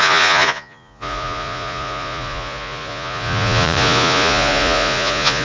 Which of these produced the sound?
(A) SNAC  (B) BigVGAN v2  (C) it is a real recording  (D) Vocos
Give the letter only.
D